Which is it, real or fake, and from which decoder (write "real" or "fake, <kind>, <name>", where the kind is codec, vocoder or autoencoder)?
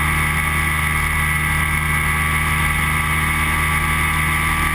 real